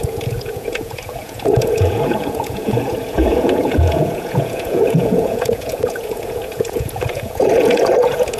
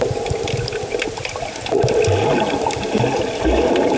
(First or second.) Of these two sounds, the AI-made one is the first